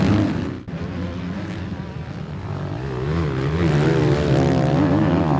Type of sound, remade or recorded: recorded